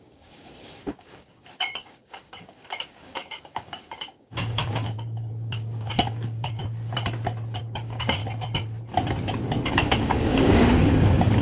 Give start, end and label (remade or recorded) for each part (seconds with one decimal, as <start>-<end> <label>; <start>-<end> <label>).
0.0-6.6 remade; 6.6-7.6 recorded; 7.6-8.2 remade; 8.2-9.7 recorded; 9.7-11.4 remade

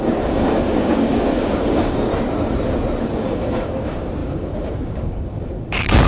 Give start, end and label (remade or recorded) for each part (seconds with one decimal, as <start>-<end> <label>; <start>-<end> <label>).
0.0-2.1 remade; 2.1-3.0 recorded; 3.0-6.1 remade

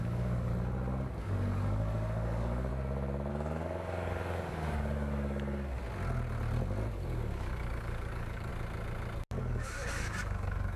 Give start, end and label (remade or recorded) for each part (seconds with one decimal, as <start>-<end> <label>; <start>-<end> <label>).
0.0-0.5 remade; 0.5-1.2 recorded; 1.2-2.7 remade; 2.7-3.3 recorded; 3.3-5.8 remade; 5.8-6.9 recorded; 6.9-8.5 remade; 8.5-9.4 recorded; 9.4-10.8 remade

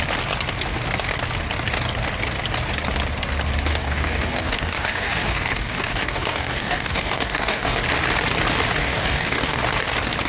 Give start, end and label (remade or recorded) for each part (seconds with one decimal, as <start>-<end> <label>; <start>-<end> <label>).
0.0-3.7 recorded; 3.7-7.8 remade; 7.8-8.8 recorded; 8.8-9.6 remade; 9.6-10.3 recorded

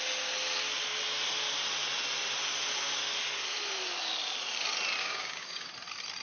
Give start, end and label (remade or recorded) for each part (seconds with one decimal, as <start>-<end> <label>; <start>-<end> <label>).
0.0-5.0 recorded; 5.0-5.7 remade; 5.7-6.2 recorded

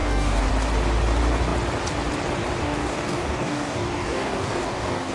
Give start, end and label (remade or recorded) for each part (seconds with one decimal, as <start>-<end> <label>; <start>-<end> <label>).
0.0-0.5 remade; 0.5-2.6 recorded; 2.6-5.1 remade